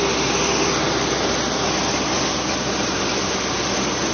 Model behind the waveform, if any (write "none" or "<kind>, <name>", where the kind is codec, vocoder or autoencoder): none